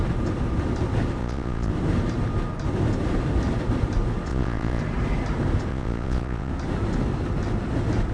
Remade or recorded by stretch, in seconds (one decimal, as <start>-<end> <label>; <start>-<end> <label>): 0.0-1.2 recorded; 1.2-1.7 remade; 1.7-4.3 recorded; 4.3-4.8 remade; 4.8-5.7 recorded; 5.7-6.5 remade; 6.5-8.1 recorded